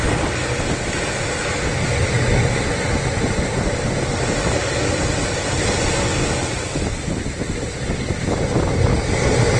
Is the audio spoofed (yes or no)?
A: no